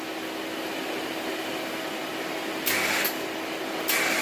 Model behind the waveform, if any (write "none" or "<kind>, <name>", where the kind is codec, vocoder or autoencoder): none